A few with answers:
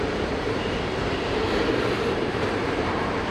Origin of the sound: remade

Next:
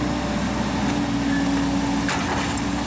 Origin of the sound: recorded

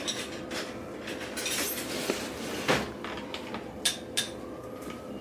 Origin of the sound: recorded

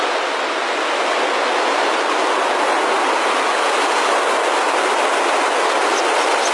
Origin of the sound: recorded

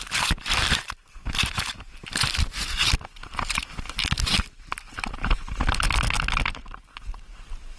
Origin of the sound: recorded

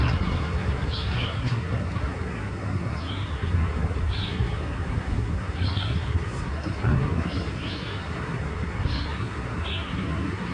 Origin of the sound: remade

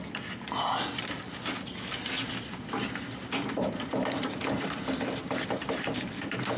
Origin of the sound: recorded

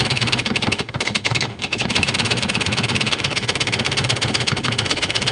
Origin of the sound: remade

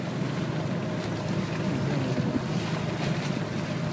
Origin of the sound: recorded